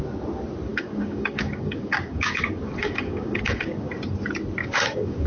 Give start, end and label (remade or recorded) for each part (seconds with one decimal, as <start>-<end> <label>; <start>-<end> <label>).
0.0-0.7 recorded; 0.7-3.9 remade; 3.9-4.6 recorded; 4.6-5.3 remade